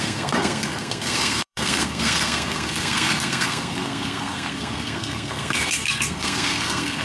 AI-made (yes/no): yes